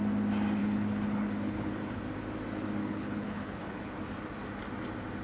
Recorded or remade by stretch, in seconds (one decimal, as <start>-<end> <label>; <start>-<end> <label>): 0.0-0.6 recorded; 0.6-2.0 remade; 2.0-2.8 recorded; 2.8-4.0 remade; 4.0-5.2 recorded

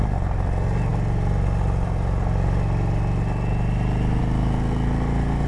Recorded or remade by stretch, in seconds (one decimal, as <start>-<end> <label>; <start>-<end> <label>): 0.0-5.5 recorded

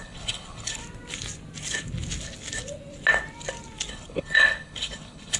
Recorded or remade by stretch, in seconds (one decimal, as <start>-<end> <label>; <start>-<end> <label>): 0.0-0.8 remade; 0.8-3.9 recorded; 3.9-5.4 remade